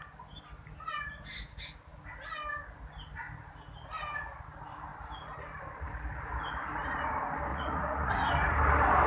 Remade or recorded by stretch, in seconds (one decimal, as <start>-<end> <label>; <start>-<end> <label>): 0.0-7.5 recorded; 7.5-8.1 remade; 8.1-9.1 recorded